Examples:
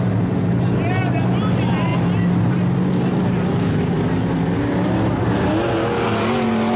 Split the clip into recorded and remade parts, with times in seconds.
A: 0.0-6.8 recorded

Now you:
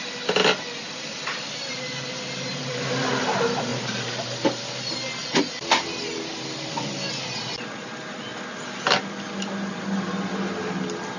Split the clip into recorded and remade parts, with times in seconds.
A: 0.0-11.2 recorded

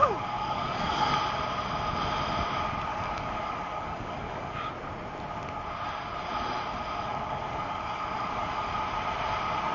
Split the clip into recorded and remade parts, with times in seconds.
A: 0.0-1.1 remade; 1.1-2.9 recorded; 2.9-4.7 remade; 4.7-7.1 recorded; 7.1-8.7 remade; 8.7-9.7 recorded

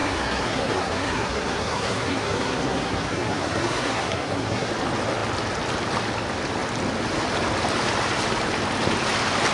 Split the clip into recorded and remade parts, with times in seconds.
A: 0.0-4.7 remade; 4.7-9.5 recorded

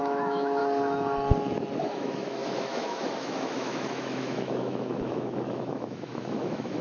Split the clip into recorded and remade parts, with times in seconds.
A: 0.0-0.6 remade; 0.6-1.8 recorded; 1.8-6.8 remade

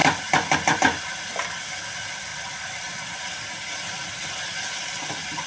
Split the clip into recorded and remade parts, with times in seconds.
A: 0.0-1.1 remade; 1.1-2.3 recorded; 2.3-3.2 remade; 3.2-5.5 recorded

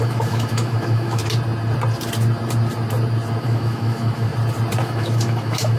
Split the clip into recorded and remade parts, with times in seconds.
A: 0.0-1.2 remade; 1.2-3.4 recorded; 3.4-4.3 remade; 4.3-4.8 recorded; 4.8-5.8 remade